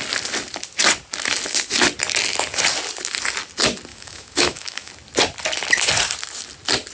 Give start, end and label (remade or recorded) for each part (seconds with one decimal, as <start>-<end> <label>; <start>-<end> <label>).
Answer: 0.0-3.9 recorded; 3.9-4.9 remade; 4.9-6.9 recorded